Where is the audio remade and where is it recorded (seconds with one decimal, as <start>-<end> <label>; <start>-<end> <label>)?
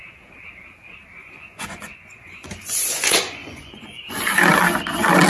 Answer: 0.0-1.2 recorded; 1.2-4.2 remade; 4.2-5.3 recorded